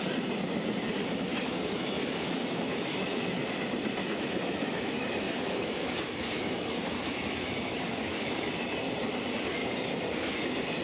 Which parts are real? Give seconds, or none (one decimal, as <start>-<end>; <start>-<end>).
0.0-1.3; 3.5-4.0; 8.5-10.8